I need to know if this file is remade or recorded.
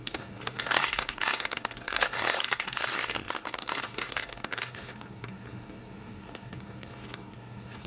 remade